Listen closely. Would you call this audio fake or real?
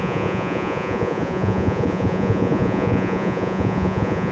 fake